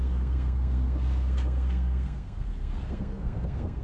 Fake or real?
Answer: fake